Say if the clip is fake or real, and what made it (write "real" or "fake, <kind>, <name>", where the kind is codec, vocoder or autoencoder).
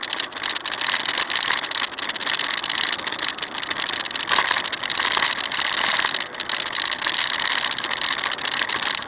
real